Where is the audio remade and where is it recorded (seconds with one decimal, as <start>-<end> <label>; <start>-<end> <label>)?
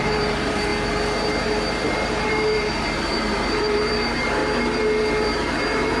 0.0-0.7 remade; 0.7-1.9 recorded; 1.9-4.4 remade; 4.4-5.0 recorded; 5.0-6.0 remade